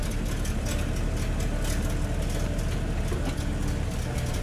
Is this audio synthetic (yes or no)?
no